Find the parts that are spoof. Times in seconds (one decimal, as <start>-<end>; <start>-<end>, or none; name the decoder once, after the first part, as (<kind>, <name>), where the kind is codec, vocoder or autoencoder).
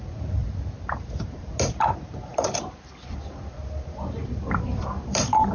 0.4-1.5 (vocoder, BigVGAN v2); 2.3-5.5